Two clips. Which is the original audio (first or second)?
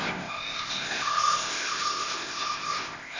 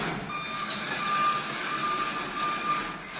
second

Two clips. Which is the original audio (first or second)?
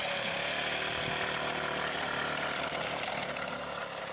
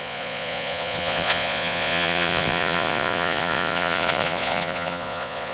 first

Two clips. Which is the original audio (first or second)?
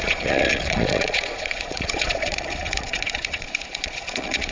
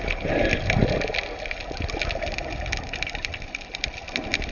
second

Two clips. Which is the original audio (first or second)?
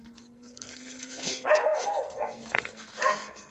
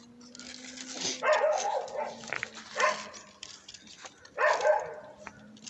second